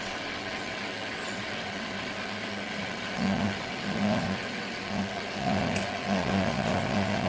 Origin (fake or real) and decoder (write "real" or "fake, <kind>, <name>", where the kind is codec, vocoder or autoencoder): fake, vocoder, WaveNeXt